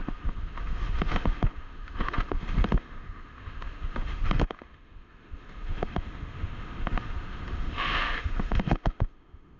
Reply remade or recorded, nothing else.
remade